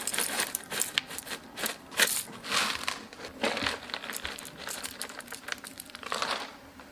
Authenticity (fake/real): fake